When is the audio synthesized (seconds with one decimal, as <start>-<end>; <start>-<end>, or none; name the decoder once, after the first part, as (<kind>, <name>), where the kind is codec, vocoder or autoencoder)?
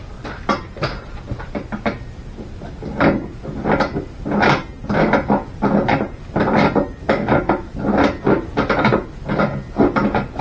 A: none